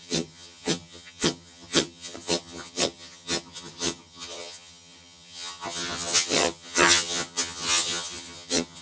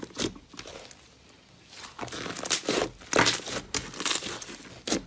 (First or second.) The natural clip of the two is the second